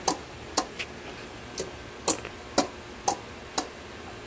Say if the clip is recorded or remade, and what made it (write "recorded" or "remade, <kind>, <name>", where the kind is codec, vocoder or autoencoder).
recorded